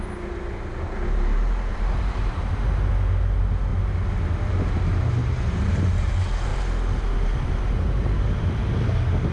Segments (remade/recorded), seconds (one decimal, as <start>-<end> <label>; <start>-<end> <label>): 0.0-1.7 recorded; 1.7-2.5 remade; 2.5-5.2 recorded; 5.2-6.1 remade; 6.1-9.3 recorded